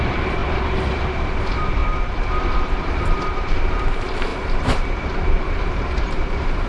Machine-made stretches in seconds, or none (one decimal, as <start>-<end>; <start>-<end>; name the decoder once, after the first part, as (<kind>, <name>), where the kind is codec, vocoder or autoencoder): 0.0-1.8 (vocoder, BigVGAN v2); 2.4-6.7